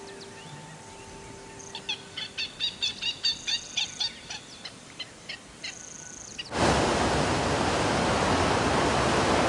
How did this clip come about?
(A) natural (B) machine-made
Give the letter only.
A